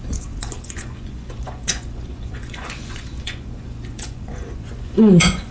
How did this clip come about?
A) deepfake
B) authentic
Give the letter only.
A